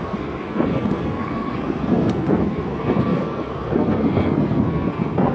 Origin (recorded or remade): remade